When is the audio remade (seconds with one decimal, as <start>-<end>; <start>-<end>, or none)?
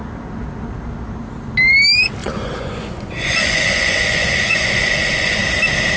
2.2-5.4